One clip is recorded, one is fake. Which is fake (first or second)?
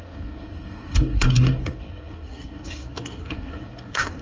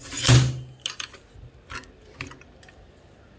first